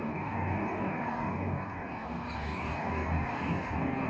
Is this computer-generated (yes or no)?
yes